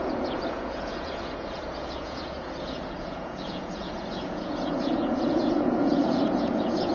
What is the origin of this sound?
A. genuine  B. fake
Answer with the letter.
B